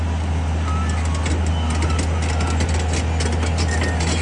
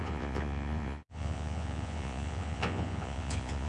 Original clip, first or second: first